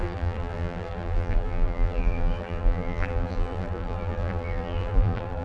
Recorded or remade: remade